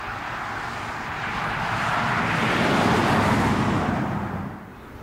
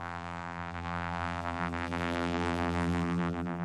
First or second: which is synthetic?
second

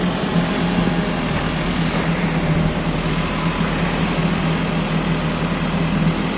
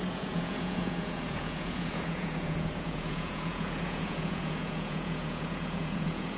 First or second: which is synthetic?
second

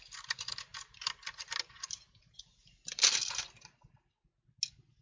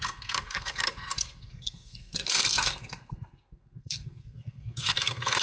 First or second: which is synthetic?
second